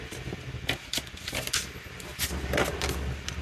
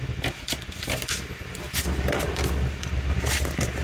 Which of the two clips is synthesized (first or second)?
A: second